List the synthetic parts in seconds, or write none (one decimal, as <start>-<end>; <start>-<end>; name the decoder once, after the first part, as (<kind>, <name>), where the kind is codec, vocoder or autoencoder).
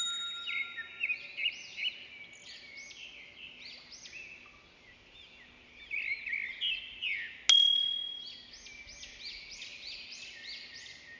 none